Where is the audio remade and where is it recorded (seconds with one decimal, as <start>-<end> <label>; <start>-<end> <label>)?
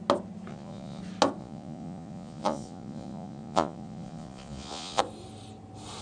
0.0-0.5 recorded; 0.5-1.0 remade; 1.0-1.4 recorded; 1.4-5.0 remade; 5.0-6.0 recorded